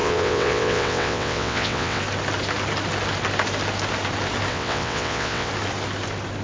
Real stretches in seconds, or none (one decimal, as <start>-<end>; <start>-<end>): 2.0-4.5; 5.5-6.4